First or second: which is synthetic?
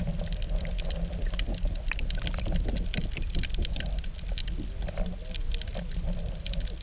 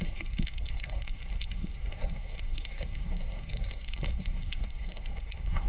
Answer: second